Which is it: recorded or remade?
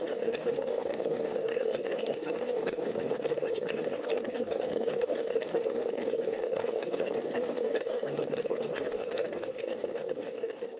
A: remade